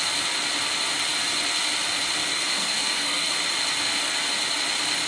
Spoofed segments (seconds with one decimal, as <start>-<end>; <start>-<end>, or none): 2.3-3.3